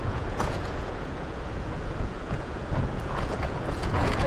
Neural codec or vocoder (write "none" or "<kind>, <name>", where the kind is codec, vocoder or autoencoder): vocoder, Vocos